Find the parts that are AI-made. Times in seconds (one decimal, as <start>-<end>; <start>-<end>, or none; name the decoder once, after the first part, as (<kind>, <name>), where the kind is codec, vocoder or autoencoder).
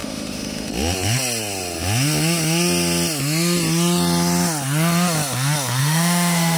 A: 0.0-0.7 (autoencoder, DAC-VAE); 5.8-6.6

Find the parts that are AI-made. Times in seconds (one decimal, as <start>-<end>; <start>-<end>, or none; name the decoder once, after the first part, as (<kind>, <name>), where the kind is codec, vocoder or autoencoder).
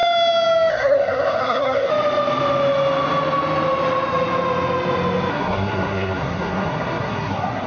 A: 0.7-1.9 (codec, SNAC); 5.3-7.7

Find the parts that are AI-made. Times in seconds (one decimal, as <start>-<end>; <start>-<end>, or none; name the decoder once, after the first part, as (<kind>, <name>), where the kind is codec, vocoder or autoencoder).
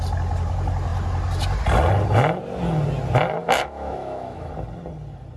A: 3.4-4.5 (autoencoder, DAC-VAE)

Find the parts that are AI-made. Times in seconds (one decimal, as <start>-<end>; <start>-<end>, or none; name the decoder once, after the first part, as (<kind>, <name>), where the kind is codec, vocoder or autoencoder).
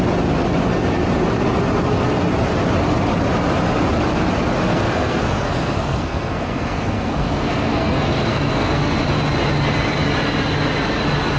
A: 4.7-9.0 (codec, SNAC)